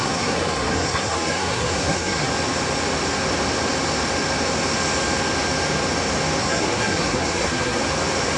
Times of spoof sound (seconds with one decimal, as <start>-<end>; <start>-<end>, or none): 0.0-2.3; 6.4-7.8